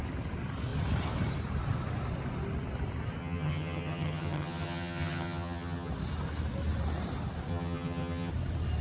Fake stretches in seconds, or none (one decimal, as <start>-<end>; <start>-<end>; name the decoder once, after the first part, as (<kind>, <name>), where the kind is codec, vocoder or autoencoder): 3.2-5.9 (vocoder, HiFi-GAN); 7.5-8.3